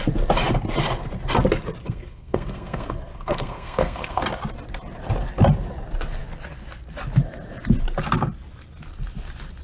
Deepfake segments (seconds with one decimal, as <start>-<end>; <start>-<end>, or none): 1.8-4.2